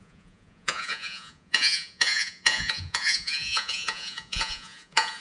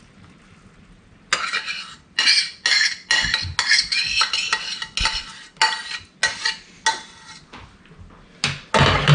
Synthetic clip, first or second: first